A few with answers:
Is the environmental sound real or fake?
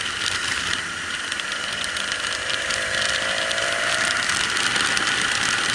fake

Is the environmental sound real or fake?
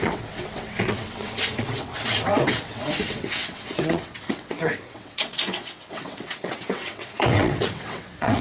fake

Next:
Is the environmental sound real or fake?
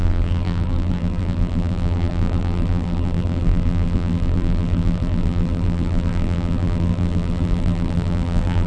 fake